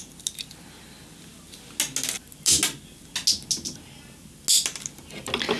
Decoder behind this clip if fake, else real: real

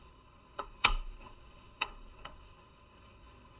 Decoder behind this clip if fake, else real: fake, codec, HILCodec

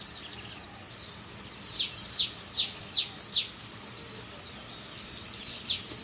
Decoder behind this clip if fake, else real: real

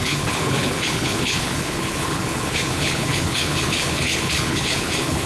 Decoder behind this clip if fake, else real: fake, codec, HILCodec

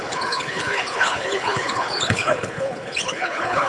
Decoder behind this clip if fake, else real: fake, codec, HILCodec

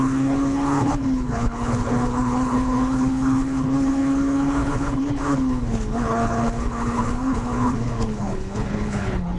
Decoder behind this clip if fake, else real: fake, codec, HILCodec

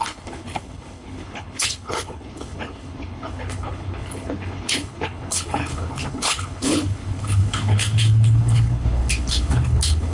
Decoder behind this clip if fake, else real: fake, codec, HILCodec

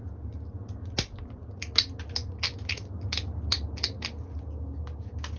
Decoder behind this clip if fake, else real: real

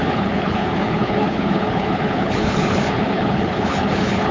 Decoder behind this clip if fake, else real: fake, codec, HILCodec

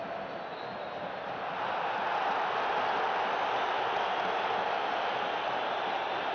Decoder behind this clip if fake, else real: real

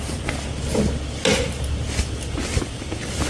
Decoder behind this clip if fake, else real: real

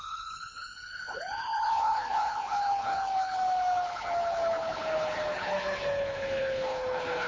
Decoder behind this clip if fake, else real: fake, codec, HILCodec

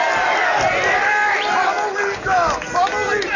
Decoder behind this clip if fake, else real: real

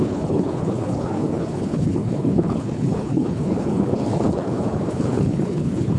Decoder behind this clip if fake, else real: fake, codec, HILCodec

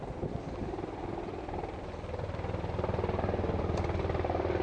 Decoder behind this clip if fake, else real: real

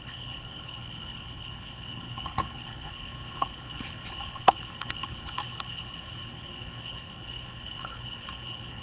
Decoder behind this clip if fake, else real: fake, codec, HILCodec